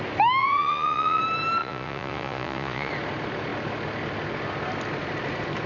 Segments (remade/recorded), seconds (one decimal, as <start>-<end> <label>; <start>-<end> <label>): 0.0-0.4 recorded; 0.4-1.2 remade; 1.2-1.6 recorded; 1.6-2.9 remade; 2.9-5.7 recorded

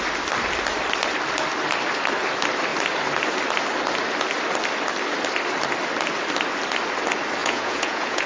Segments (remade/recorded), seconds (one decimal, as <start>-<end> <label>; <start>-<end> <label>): 0.0-7.4 recorded; 7.4-8.3 remade